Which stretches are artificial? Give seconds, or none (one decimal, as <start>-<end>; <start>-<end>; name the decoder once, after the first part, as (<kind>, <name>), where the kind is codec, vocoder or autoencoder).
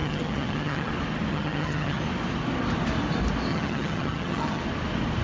0.0-0.9 (vocoder, HiFi-GAN); 1.3-2.0; 3.5-4.6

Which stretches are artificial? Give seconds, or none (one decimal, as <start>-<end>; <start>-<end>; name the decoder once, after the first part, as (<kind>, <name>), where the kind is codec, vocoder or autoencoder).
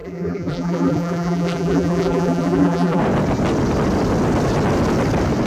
0.0-3.0 (vocoder, BigVGAN v2)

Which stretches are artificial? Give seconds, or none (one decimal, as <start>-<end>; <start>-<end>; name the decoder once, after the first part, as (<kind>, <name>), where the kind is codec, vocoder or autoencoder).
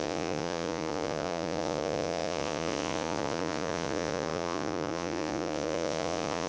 0.0-6.5 (vocoder, Vocos)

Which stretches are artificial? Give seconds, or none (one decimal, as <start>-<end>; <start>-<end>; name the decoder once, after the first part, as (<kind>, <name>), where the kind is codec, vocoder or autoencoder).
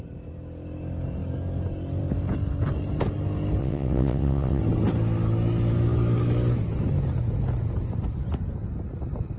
3.6-4.6 (vocoder, WaveNeXt)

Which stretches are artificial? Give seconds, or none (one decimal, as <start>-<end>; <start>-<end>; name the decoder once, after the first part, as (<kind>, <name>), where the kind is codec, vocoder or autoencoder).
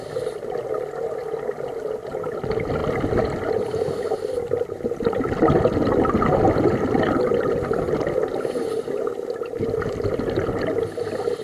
none